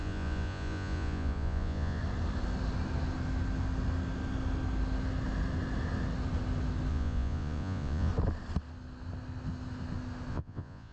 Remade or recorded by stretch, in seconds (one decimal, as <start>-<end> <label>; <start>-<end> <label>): 0.0-2.0 remade; 2.0-6.9 recorded; 6.9-8.1 remade; 8.1-10.3 recorded; 10.3-10.9 remade